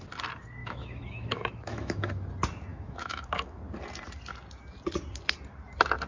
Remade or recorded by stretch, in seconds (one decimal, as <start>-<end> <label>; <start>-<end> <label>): 0.0-0.6 recorded; 0.6-2.3 remade; 2.3-2.7 recorded; 2.7-3.6 remade; 3.6-6.1 recorded